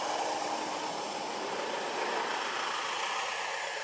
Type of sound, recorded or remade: recorded